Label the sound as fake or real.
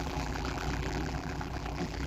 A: fake